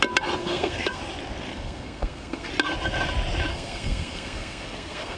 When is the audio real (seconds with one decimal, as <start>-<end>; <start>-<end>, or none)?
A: 0.0-0.4; 1.0-1.5; 2.5-3.5